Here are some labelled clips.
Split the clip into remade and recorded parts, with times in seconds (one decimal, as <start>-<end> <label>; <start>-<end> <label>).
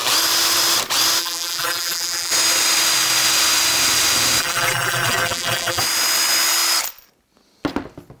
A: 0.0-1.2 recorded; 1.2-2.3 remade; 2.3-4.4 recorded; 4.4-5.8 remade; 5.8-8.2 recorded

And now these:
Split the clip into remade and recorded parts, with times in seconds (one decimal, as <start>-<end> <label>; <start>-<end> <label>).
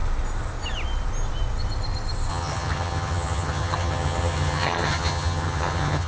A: 0.0-2.3 recorded; 2.3-6.1 remade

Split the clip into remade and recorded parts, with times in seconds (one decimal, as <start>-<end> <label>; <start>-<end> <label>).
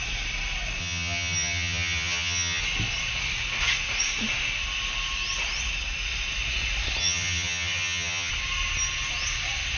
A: 0.0-0.8 recorded; 0.8-2.6 remade; 2.6-7.0 recorded; 7.0-8.3 remade; 8.3-9.8 recorded